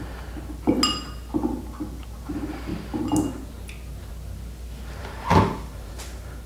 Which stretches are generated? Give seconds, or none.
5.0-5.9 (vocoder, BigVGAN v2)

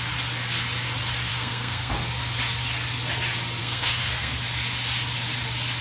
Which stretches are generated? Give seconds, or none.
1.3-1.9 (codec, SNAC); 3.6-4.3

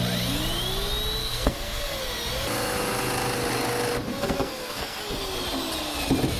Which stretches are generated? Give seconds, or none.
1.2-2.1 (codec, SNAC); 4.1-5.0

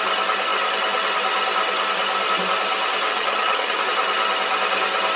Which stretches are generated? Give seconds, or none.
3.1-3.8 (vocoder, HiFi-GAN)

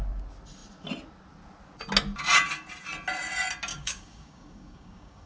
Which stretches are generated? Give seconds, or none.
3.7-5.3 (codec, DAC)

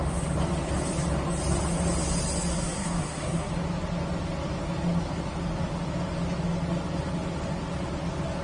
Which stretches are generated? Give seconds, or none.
2.5-3.5 (codec, SNAC)

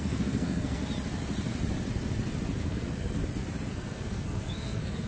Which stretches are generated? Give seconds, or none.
0.0-0.8 (codec, SNAC); 2.6-3.2; 3.7-5.1

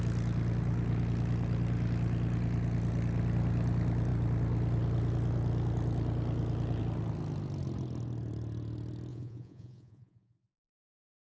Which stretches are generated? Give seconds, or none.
9.1-10.7 (vocoder, Vocos)